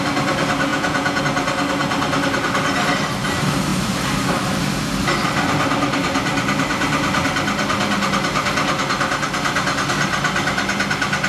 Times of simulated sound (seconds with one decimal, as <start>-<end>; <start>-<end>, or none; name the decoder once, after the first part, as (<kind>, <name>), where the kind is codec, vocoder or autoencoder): 0.7-1.2 (vocoder, Vocos)